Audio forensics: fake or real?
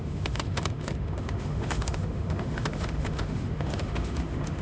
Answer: fake